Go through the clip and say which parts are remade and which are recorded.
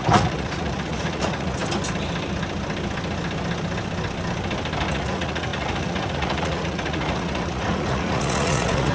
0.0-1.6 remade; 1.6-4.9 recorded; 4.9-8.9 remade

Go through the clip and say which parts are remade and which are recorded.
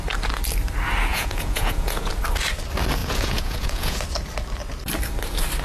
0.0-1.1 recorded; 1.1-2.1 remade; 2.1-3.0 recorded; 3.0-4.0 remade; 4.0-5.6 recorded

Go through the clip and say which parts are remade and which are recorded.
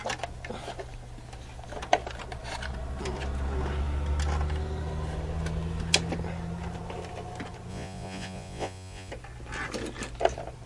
0.0-7.7 recorded; 7.7-9.1 remade; 9.1-10.7 recorded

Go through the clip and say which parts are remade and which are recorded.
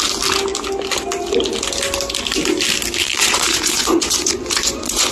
0.0-3.0 recorded; 3.0-5.1 remade